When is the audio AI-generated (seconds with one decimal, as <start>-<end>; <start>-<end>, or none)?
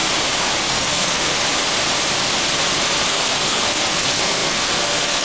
0.7-1.3; 3.1-5.2